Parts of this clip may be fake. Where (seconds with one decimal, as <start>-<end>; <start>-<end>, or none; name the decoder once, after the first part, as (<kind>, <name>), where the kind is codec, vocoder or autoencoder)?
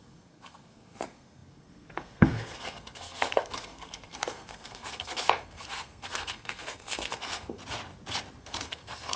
0.0-7.6 (codec, SNAC); 8.4-9.2